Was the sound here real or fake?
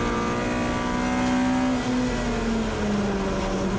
real